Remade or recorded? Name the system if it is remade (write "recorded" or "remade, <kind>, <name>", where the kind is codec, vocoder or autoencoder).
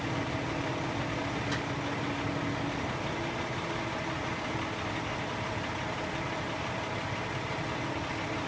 recorded